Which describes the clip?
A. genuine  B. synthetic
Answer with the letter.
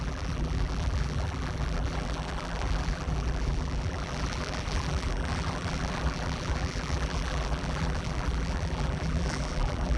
B